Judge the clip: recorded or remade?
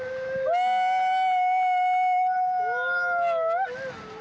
recorded